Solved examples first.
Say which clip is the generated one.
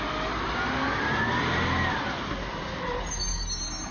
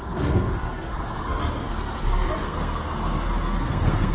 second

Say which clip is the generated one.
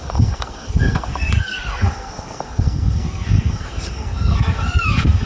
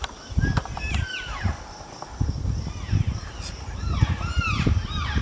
first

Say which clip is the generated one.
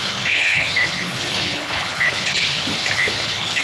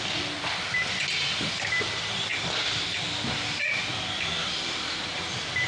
first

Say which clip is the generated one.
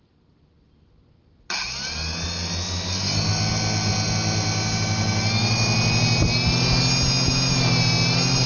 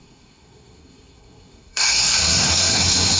second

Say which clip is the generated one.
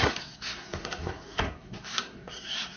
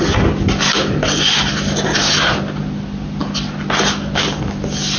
first